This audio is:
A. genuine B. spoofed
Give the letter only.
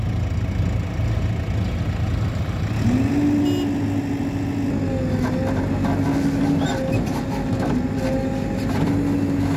A